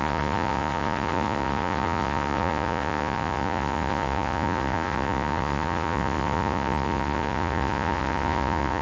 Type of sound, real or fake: fake